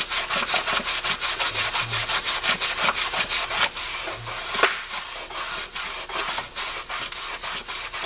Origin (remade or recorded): recorded